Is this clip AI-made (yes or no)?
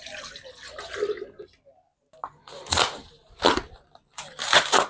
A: no